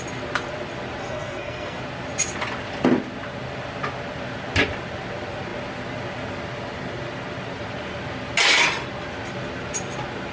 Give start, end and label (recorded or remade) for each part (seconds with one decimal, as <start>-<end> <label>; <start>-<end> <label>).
0.0-1.0 recorded; 1.0-1.8 remade; 1.8-10.3 recorded